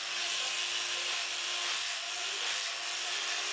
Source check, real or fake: real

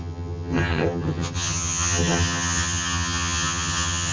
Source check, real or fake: fake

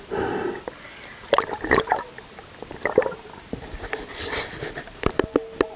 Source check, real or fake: real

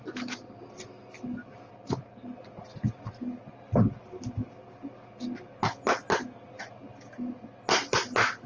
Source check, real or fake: real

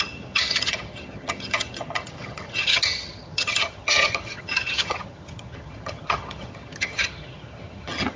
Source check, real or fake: fake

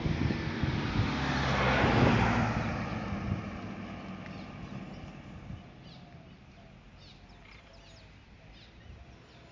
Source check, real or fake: real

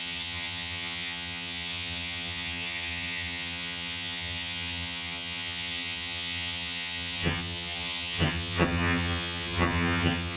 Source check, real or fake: fake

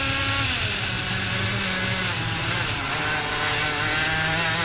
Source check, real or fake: real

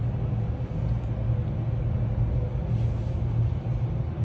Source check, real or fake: real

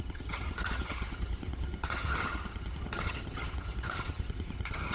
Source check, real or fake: fake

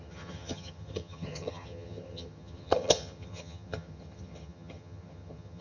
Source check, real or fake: fake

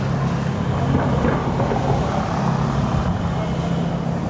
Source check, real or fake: real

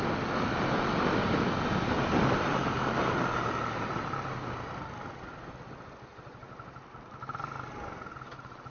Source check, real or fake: real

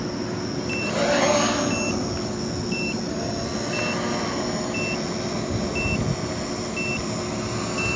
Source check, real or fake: real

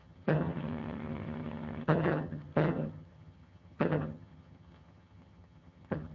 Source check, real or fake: fake